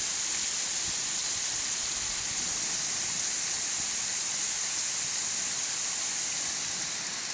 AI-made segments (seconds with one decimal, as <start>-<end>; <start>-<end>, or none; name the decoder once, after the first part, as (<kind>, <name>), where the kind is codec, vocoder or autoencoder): none